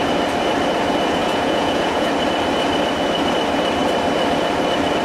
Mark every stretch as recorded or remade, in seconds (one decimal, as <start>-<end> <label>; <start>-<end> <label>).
0.0-1.2 recorded; 1.2-2.1 remade; 2.1-5.0 recorded

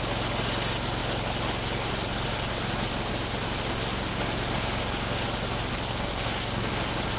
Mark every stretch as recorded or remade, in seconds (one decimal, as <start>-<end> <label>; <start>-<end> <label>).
0.0-5.7 recorded; 5.7-6.7 remade; 6.7-7.2 recorded